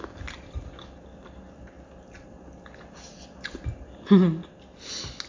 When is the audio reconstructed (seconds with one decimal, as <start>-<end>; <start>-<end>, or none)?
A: none